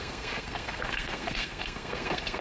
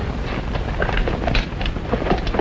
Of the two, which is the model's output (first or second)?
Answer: first